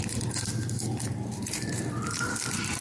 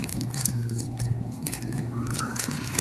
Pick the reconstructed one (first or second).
second